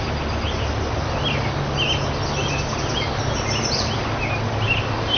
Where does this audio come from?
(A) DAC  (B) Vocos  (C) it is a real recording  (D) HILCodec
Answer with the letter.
C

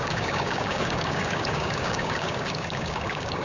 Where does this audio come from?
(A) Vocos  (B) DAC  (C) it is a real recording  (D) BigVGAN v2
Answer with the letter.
B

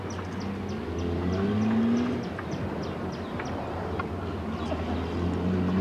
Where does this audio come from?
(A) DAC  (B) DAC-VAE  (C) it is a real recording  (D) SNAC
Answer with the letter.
C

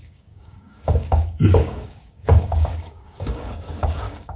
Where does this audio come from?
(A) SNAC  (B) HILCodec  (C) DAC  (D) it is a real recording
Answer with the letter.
C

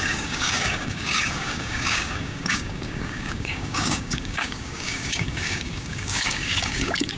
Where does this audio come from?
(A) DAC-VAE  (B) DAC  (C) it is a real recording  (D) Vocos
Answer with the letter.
B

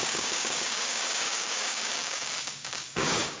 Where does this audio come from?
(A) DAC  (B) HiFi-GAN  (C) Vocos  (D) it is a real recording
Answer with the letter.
A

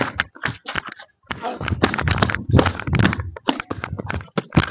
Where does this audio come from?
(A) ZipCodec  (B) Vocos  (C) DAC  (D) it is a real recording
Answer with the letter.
D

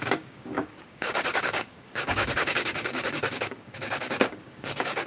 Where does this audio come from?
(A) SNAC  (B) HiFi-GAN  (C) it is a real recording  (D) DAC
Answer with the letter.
D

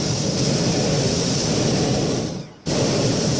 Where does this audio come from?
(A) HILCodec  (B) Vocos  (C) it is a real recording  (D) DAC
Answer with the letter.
C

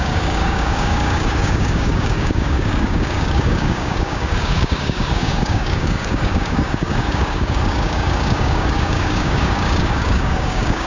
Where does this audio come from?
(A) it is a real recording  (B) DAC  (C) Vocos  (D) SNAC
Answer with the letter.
B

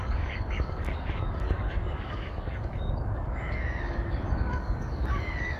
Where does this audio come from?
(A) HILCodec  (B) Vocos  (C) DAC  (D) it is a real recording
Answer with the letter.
C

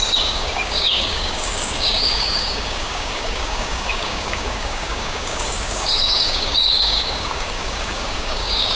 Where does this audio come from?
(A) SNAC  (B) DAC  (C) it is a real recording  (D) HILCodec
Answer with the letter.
B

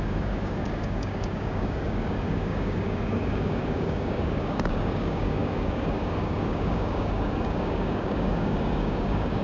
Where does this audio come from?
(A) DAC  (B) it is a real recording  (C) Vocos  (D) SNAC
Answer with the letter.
A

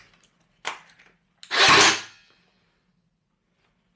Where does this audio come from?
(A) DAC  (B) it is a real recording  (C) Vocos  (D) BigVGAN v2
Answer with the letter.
B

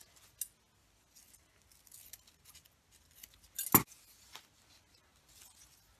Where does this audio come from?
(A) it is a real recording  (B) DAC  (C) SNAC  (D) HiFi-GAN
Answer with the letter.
A